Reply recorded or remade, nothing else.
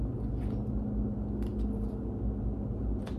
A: recorded